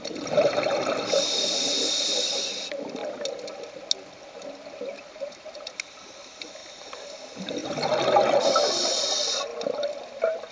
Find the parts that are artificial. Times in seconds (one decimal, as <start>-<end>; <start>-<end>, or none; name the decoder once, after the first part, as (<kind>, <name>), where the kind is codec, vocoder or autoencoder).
0.0-3.0 (vocoder, BigVGAN v2); 6.0-6.6; 7.1-7.6; 8.4-9.5